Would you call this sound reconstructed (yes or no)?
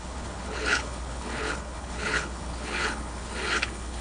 yes